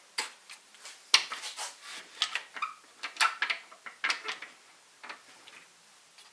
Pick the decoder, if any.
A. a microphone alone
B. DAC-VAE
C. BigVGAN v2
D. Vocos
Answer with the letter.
A